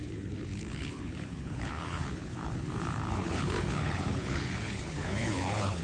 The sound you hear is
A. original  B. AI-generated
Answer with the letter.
B